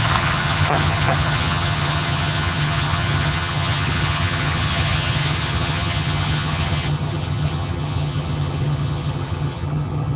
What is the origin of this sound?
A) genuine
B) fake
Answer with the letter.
B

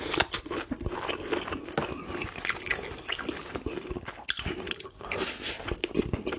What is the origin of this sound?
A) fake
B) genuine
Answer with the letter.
B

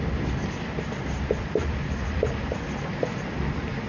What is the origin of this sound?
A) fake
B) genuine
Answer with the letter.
B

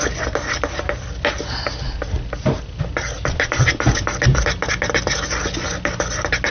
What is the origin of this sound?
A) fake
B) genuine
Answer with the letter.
B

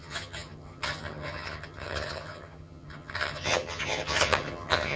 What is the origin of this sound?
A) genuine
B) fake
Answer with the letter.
B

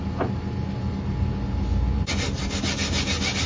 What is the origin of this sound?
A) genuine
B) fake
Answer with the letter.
A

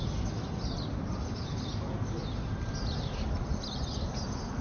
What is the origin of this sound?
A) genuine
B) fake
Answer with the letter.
A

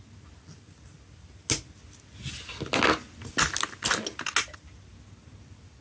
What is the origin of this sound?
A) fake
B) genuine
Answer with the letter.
B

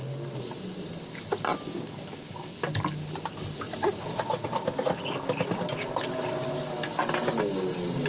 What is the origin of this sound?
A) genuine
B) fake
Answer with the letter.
A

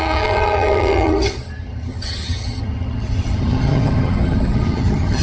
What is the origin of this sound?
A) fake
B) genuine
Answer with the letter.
A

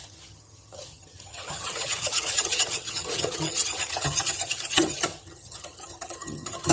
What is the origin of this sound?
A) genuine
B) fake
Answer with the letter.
B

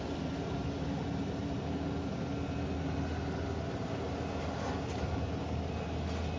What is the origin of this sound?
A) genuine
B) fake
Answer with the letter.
A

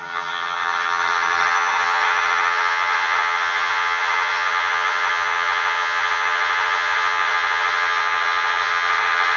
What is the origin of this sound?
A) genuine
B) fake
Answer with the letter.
B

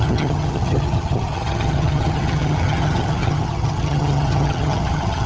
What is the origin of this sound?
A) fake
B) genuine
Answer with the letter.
A